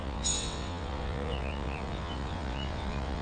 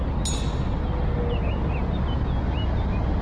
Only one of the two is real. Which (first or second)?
second